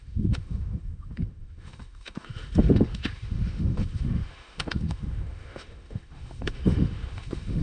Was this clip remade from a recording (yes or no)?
yes